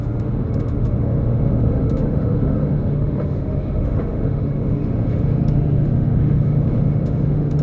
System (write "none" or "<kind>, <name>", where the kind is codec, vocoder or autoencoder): autoencoder, DAC-VAE